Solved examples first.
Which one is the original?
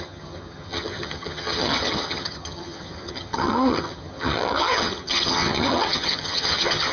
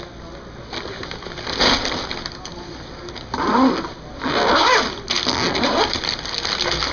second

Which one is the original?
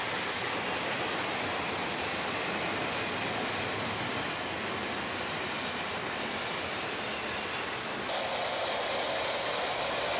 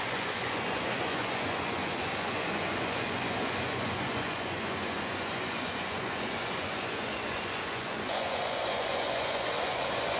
first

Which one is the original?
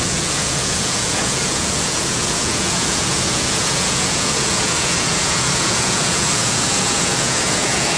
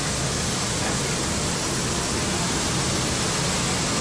second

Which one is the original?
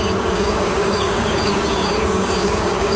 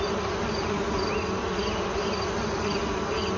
second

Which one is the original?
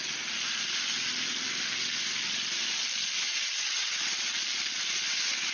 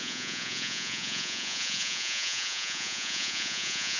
first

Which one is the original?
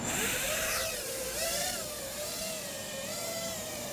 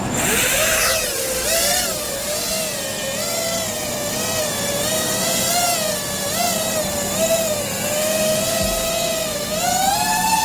second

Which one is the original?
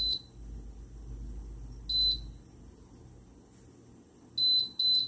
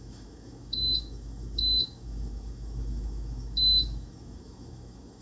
first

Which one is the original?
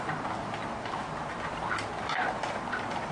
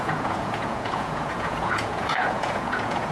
first